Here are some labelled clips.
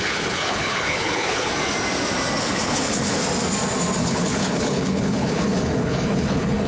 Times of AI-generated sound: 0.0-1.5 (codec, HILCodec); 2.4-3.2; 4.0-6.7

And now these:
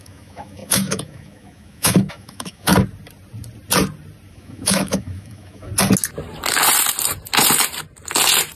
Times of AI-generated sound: 0.0-2.7 (autoencoder, DAC-VAE); 4.3-5.7

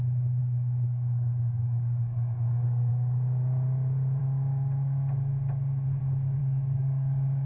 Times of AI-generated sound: 0.4-2.9 (codec, DAC); 6.4-7.5

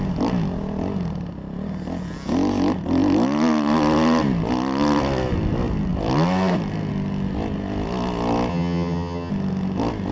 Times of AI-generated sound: 8.5-9.3 (vocoder, HiFi-GAN)

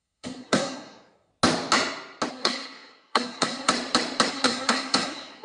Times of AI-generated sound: 0.0-1.3 (codec, SNAC); 2.3-3.7; 4.3-5.4

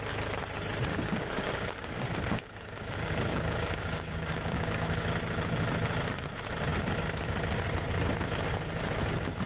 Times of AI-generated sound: 0.9-5.1 (codec, DAC)

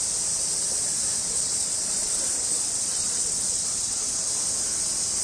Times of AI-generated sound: 1.2-4.3 (vocoder, Vocos)